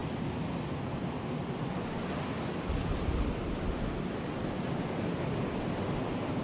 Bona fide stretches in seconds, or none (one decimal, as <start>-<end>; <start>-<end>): 0.0-6.4